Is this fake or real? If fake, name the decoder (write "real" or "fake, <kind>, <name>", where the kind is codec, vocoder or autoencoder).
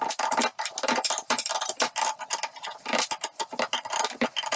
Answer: real